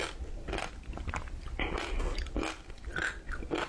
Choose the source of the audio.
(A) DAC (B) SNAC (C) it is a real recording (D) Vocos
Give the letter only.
C